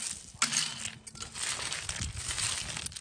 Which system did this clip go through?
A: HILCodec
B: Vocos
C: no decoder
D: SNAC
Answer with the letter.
C